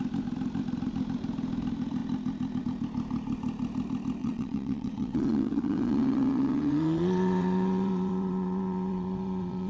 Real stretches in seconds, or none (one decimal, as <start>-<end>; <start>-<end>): 0.0-4.2